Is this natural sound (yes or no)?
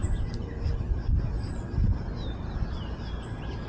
yes